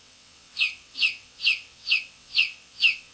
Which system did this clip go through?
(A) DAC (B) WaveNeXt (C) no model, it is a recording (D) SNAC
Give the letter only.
B